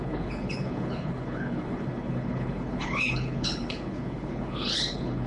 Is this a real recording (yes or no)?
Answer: no